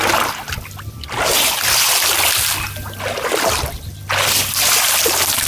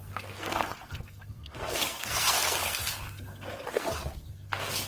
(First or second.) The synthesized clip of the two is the second